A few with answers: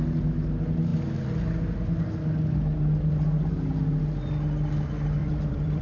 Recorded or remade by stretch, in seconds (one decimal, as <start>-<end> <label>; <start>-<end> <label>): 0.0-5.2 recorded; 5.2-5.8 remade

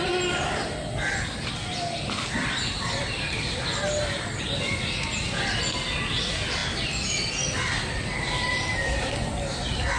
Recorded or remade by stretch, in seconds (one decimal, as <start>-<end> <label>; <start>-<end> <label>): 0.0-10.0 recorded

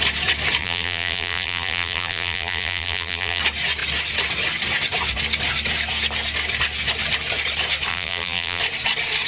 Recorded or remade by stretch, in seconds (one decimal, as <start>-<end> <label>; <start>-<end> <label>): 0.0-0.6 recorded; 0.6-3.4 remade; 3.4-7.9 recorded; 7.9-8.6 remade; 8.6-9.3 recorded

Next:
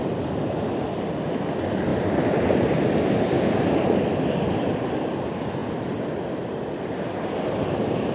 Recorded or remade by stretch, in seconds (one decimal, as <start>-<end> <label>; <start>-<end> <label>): 0.0-1.9 recorded; 1.9-3.7 remade; 3.7-8.1 recorded

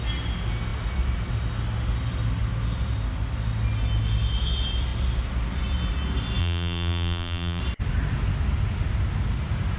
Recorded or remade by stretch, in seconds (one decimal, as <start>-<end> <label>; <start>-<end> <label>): 0.0-6.4 recorded; 6.4-7.6 remade; 7.6-9.8 recorded

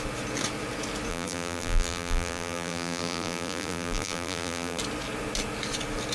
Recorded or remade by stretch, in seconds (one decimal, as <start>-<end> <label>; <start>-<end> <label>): 0.0-1.1 recorded; 1.1-4.8 remade; 4.8-6.1 recorded

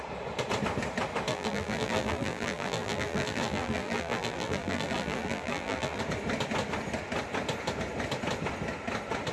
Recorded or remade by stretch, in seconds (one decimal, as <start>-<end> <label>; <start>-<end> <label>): 0.0-1.3 recorded; 1.3-6.0 remade; 6.0-9.3 recorded

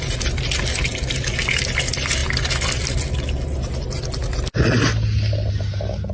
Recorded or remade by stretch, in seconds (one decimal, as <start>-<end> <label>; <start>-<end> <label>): 0.0-6.1 recorded